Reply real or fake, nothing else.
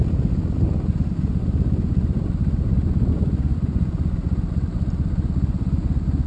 real